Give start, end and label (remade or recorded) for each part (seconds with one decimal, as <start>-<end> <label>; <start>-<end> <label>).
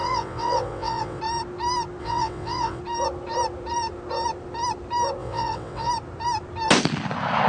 0.0-1.2 remade; 1.2-2.0 recorded; 2.0-2.8 remade; 2.8-5.2 recorded; 5.2-5.9 remade; 5.9-7.5 recorded